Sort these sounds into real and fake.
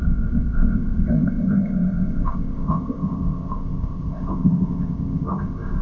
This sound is fake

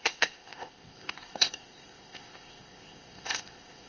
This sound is fake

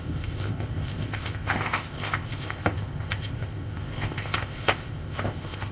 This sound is fake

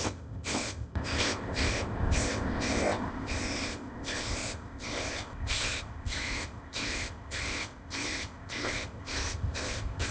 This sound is fake